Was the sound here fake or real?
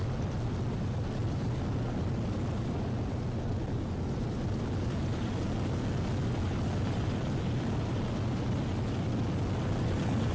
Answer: real